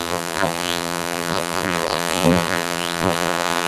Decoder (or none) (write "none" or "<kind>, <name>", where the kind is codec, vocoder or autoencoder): vocoder, BigVGAN v2